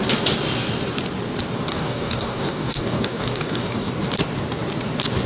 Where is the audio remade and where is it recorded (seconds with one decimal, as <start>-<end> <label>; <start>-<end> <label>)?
0.0-1.7 recorded; 1.7-3.9 remade; 3.9-5.3 recorded

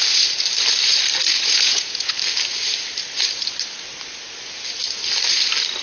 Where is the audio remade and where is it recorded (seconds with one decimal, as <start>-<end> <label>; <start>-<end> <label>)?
0.0-1.3 recorded; 1.3-2.1 remade; 2.1-5.8 recorded

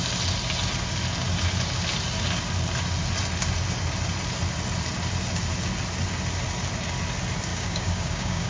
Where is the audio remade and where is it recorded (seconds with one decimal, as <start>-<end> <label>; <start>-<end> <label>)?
0.0-7.5 recorded; 7.5-8.5 remade

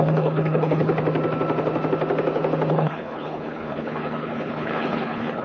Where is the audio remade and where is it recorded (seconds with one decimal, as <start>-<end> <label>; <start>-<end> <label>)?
0.0-0.9 remade; 0.9-2.7 recorded; 2.7-5.4 remade

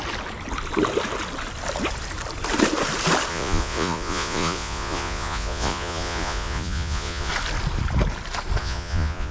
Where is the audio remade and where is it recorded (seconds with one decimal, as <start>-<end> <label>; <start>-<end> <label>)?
0.0-3.3 recorded; 3.3-7.3 remade; 7.3-8.6 recorded; 8.6-9.3 remade